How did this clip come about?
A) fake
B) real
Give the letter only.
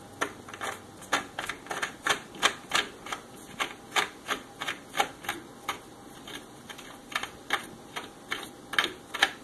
B